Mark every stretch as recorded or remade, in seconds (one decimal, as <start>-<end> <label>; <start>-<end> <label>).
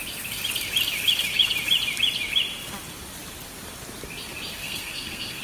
0.0-4.6 recorded; 4.6-5.4 remade